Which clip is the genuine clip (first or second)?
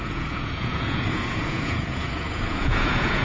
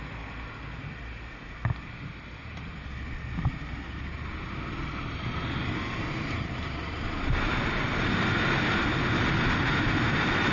second